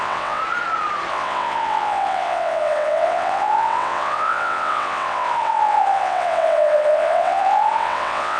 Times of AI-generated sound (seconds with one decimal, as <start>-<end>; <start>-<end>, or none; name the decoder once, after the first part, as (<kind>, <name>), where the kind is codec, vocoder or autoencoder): 0.0-0.4 (vocoder, WaveNeXt); 1.1-8.4